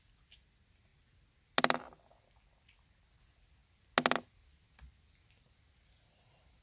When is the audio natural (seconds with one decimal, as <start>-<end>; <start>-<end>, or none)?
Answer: 0.0-6.6